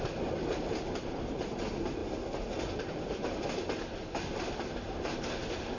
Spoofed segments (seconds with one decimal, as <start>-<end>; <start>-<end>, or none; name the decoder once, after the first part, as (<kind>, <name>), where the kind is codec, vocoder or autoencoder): none